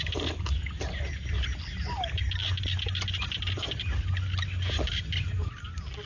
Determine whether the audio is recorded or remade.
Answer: recorded